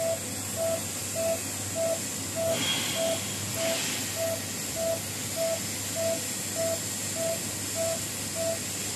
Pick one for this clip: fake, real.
real